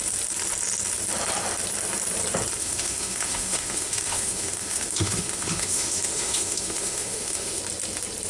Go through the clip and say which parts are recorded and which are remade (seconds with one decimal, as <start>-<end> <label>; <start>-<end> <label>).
0.0-2.6 recorded; 2.6-7.6 remade; 7.6-8.3 recorded